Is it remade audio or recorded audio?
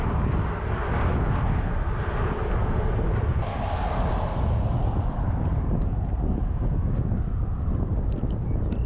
recorded